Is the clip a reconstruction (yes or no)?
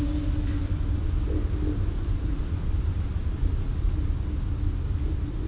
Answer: no